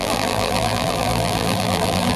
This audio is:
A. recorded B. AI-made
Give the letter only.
B